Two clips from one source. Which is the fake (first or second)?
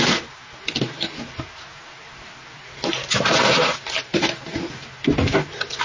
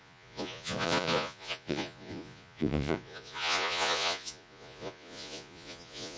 second